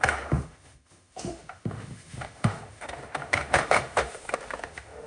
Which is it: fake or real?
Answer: fake